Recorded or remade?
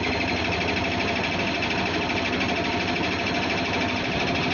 recorded